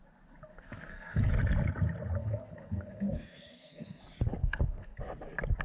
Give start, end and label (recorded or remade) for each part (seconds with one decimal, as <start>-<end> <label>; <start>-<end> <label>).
0.0-0.5 recorded; 0.5-1.3 remade; 1.3-2.2 recorded; 2.2-4.0 remade; 4.0-4.4 recorded; 4.4-5.0 remade; 5.0-5.6 recorded